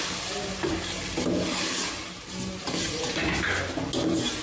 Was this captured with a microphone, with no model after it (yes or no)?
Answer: yes